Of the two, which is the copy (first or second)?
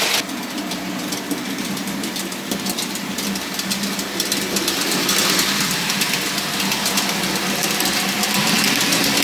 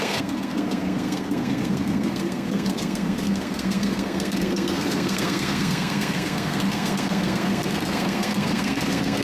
second